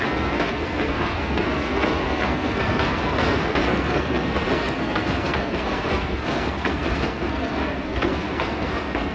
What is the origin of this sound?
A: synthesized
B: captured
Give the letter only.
A